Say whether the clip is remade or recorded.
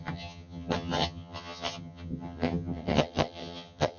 remade